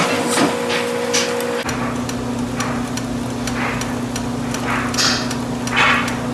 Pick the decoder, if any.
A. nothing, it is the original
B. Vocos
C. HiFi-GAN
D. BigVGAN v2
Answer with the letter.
A